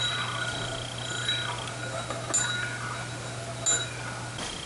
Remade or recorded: recorded